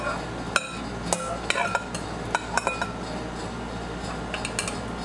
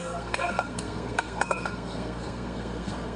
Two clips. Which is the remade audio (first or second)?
second